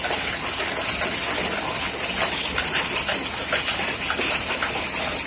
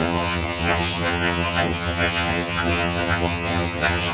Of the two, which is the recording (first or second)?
first